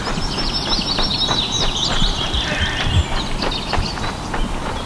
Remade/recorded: recorded